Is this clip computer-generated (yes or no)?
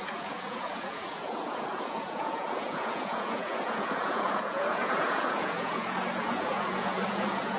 yes